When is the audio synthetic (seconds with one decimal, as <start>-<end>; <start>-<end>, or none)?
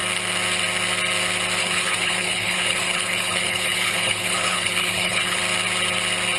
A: 1.6-5.4